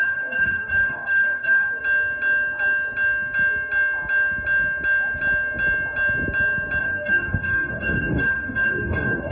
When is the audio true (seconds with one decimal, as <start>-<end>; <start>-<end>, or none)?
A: 1.8-6.8